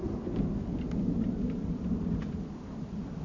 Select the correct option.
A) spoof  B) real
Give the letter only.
B